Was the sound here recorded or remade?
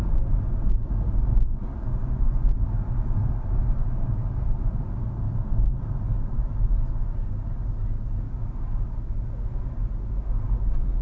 recorded